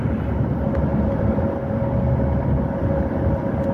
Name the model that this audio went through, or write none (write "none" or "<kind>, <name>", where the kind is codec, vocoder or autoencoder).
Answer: none